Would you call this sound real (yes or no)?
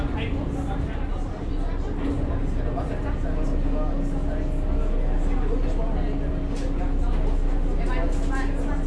yes